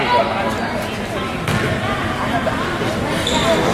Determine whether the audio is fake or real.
real